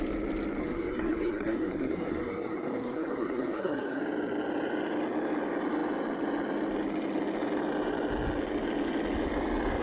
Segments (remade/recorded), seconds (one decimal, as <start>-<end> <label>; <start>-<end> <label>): 0.0-0.6 recorded; 0.6-4.0 remade; 4.0-9.8 recorded